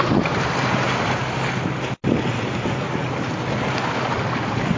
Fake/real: real